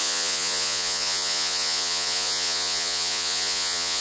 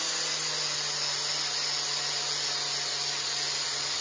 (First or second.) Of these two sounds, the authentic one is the second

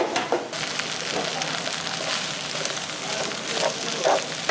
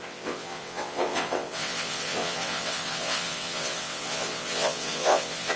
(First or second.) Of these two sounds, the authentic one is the first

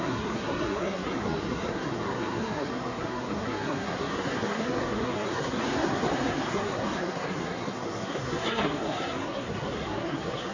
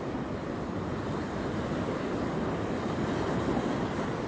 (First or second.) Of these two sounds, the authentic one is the second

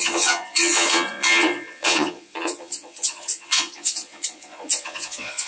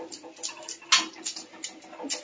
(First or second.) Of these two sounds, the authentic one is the second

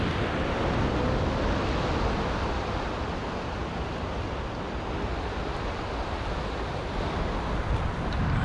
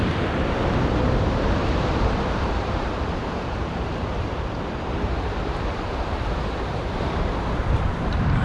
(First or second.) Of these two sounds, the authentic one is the first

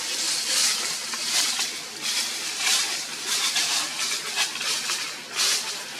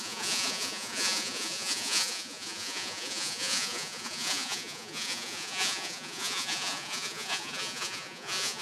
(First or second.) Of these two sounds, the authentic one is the first